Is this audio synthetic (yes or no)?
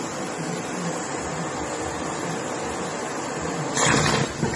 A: no